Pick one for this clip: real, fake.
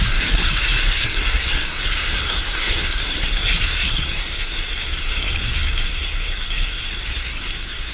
fake